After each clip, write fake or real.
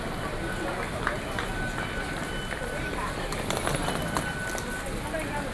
real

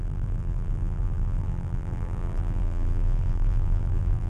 fake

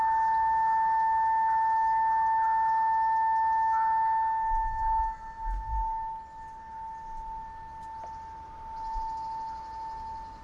real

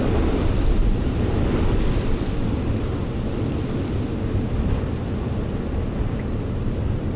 real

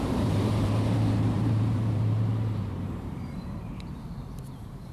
fake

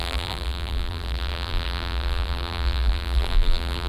fake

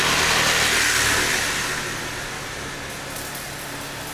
real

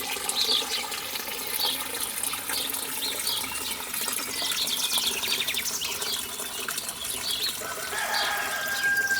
real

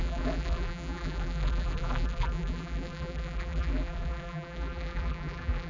fake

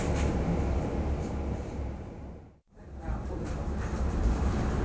fake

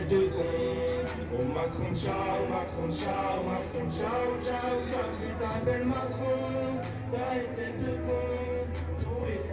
real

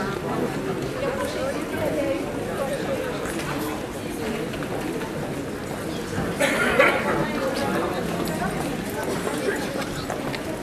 real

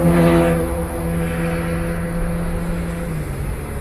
real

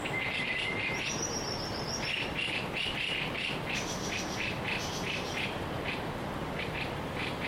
fake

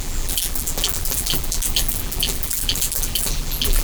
fake